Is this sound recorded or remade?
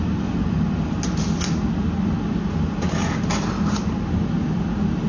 recorded